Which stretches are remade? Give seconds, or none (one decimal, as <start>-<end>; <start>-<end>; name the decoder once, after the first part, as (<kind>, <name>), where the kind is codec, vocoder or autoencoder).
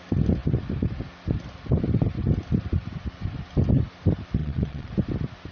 4.4-4.9 (vocoder, Vocos)